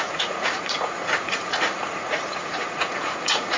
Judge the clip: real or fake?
fake